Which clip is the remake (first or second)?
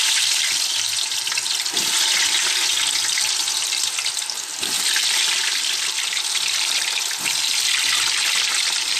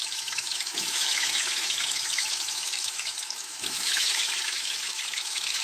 second